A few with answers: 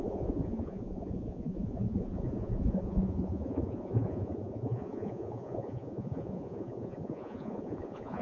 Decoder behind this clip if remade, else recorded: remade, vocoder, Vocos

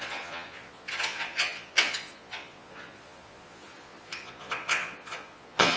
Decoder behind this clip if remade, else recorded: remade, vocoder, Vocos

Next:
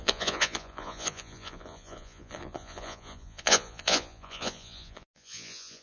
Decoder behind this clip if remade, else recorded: remade, vocoder, Vocos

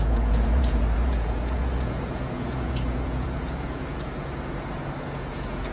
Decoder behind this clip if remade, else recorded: remade, vocoder, Vocos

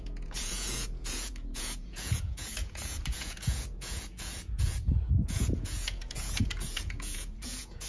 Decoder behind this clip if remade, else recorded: remade, vocoder, Vocos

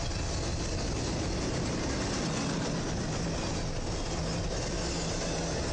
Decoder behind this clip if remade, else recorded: recorded